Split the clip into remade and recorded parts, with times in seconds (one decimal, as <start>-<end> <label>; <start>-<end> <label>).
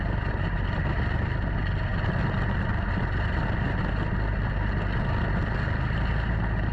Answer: 0.0-6.7 recorded